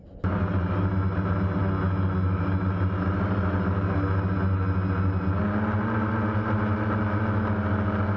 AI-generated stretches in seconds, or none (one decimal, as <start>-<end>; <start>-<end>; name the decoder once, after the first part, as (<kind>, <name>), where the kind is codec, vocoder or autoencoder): none